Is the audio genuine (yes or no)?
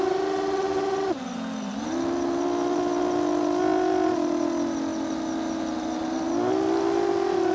yes